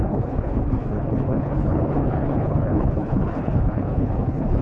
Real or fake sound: fake